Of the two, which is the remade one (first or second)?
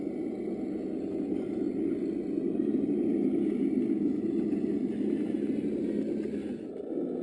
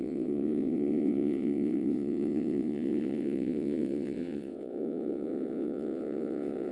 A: second